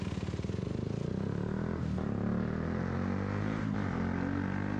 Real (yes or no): yes